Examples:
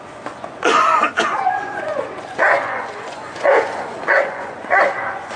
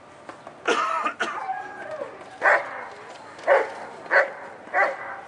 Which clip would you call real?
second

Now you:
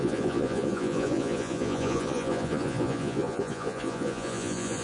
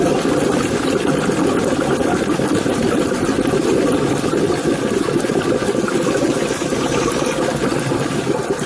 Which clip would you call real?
second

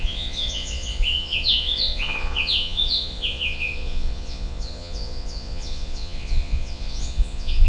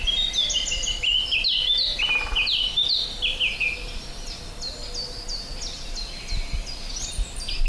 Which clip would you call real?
second